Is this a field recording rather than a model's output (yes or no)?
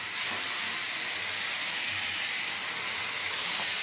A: yes